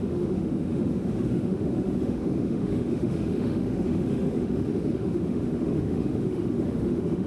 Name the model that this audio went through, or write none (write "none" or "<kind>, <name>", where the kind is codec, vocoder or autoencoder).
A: autoencoder, DAC-VAE